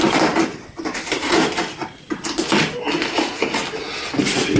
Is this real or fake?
real